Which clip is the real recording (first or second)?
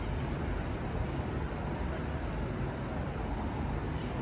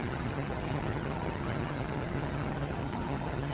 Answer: first